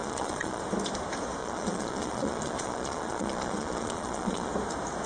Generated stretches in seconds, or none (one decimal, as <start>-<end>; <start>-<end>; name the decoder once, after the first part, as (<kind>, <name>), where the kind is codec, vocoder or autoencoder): 0.0-0.6 (vocoder, Vocos); 1.4-4.5